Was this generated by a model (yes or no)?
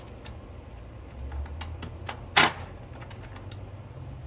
no